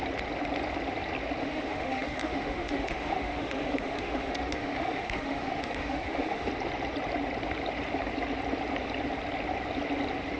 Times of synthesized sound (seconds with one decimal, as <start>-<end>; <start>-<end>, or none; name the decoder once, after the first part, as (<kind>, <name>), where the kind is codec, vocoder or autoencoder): 1.4-6.5 (autoencoder, DAC-VAE)